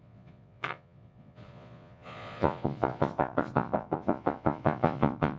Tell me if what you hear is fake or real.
fake